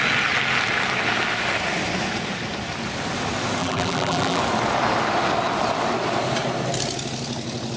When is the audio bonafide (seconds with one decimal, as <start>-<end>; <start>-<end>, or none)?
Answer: 0.0-3.6; 4.4-7.8